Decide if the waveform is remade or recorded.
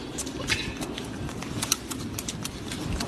recorded